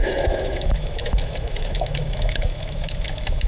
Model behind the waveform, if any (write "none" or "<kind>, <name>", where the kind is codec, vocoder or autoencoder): autoencoder, DAC-VAE